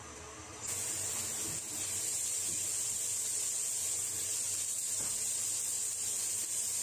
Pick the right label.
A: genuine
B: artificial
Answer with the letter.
A